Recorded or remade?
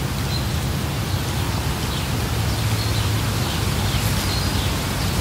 recorded